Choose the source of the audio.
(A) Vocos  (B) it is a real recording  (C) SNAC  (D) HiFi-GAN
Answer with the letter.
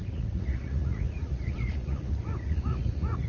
A